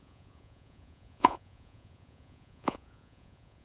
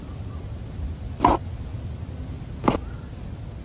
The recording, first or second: second